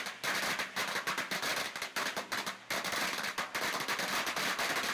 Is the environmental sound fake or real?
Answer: real